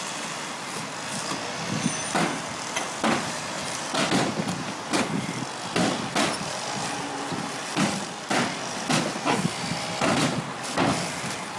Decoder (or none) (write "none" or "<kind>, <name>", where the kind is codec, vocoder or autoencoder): none